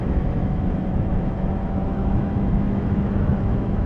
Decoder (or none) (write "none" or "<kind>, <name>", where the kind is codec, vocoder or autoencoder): autoencoder, DAC-VAE